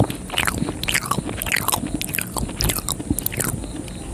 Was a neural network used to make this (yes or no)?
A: no